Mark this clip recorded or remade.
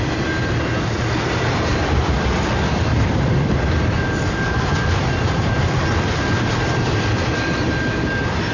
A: remade